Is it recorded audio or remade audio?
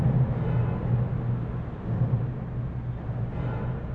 recorded